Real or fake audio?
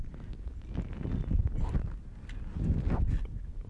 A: real